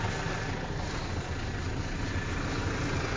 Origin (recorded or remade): recorded